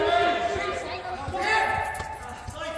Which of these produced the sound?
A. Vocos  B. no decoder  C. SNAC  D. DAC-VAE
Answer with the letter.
B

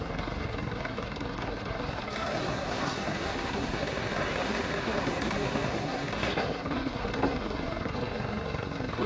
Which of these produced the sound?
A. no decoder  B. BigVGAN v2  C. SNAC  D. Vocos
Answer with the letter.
C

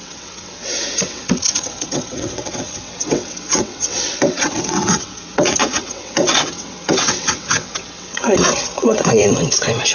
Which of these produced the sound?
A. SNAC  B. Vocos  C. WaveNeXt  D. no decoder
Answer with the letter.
C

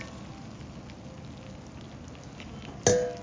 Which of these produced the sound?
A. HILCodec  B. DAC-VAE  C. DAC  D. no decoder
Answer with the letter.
D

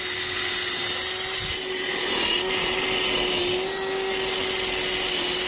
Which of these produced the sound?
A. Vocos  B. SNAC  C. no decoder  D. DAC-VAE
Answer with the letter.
C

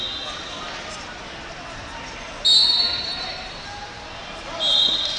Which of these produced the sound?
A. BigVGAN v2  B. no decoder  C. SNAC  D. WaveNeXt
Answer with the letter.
B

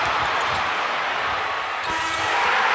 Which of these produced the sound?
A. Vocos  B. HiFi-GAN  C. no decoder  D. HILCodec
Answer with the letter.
C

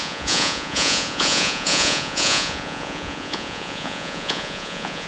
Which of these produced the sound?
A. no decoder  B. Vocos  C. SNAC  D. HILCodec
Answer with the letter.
B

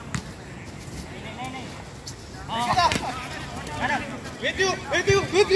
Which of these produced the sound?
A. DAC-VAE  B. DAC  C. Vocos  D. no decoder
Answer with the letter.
D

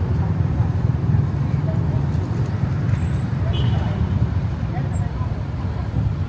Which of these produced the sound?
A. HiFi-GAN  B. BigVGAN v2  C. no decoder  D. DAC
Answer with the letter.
B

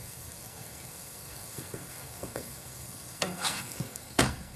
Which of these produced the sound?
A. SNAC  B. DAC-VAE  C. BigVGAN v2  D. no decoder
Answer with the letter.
A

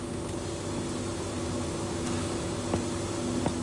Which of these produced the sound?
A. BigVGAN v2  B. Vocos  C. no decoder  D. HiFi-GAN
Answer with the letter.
C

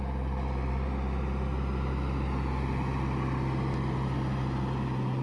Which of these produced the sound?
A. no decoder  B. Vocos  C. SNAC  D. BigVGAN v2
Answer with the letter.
A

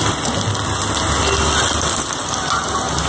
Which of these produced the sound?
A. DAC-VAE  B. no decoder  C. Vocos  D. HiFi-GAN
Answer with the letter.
B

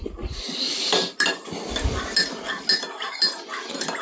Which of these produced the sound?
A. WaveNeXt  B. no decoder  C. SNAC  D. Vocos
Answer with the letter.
B